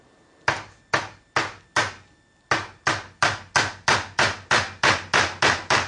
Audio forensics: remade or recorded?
recorded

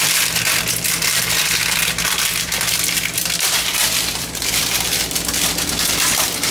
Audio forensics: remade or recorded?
remade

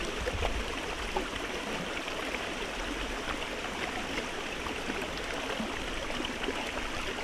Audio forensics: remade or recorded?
recorded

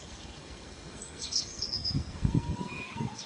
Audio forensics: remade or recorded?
remade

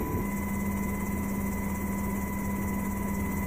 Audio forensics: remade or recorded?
recorded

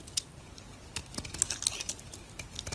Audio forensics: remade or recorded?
recorded